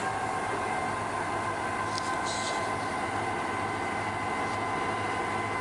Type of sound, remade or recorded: recorded